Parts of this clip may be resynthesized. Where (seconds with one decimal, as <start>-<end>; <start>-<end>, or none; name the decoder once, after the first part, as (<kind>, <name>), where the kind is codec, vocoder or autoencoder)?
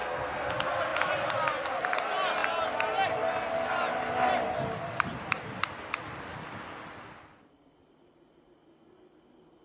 0.0-0.5 (codec, SNAC)